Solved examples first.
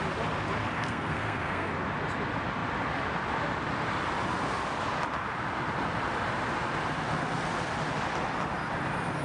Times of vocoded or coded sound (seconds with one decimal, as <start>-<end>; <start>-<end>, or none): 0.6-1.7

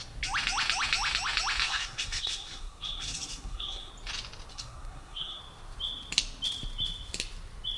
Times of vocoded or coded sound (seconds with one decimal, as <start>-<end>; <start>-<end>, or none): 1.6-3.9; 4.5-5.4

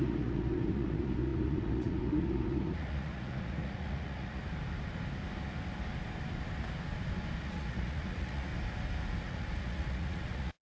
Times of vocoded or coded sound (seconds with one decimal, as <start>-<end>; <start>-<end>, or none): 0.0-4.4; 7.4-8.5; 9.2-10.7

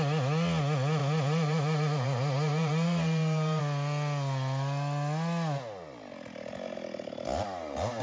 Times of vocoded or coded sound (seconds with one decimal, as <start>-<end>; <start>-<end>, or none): 1.0-3.6